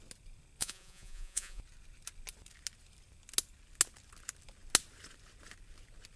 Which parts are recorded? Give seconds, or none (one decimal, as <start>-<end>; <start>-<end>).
0.0-0.6; 1.6-6.2